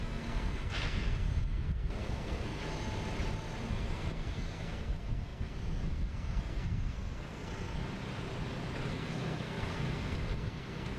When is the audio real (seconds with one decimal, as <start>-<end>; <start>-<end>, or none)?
2.6-3.7; 7.8-8.9